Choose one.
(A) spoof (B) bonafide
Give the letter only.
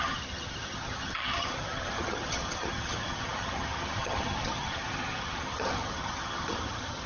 A